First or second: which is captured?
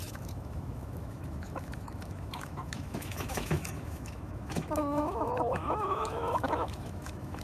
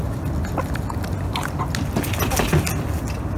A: second